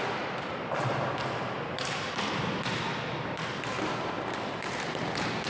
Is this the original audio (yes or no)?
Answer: yes